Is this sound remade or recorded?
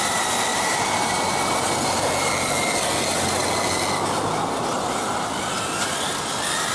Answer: recorded